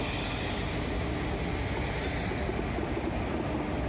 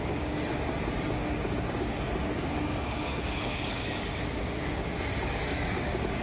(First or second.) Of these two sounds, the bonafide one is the first